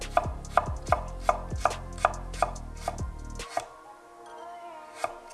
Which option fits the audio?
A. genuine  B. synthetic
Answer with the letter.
A